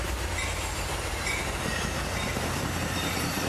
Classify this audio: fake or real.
fake